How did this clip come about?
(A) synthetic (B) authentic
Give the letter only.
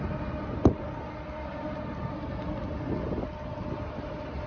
B